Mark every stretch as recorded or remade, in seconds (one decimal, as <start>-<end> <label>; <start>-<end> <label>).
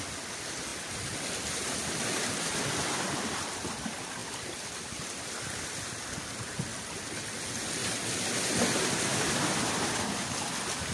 0.0-4.2 recorded; 4.2-6.1 remade; 6.1-6.7 recorded; 6.7-7.2 remade; 7.2-7.8 recorded; 7.8-8.6 remade; 8.6-10.9 recorded